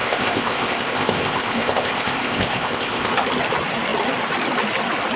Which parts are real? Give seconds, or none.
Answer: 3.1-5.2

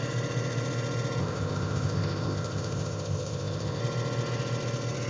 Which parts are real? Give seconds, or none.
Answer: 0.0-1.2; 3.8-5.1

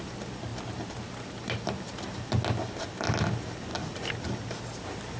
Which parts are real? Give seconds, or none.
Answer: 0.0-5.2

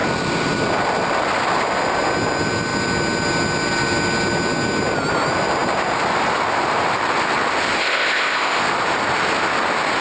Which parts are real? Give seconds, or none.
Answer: 0.0-7.8; 8.6-10.0

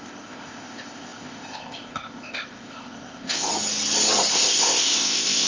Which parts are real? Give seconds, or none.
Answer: 3.5-4.3

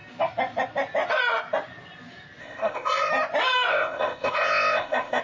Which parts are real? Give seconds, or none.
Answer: 0.0-2.4; 3.1-3.7

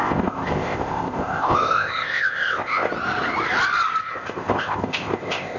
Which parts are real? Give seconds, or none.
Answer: 2.9-4.0

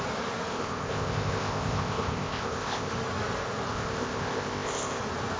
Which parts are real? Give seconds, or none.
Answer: 0.0-0.5; 2.9-3.7; 5.0-5.4